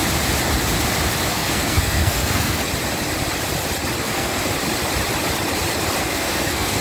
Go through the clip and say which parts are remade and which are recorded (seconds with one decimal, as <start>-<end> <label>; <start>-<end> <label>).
0.0-1.3 recorded; 1.3-2.7 remade; 2.7-4.0 recorded; 4.0-4.4 remade; 4.4-6.0 recorded; 6.0-6.8 remade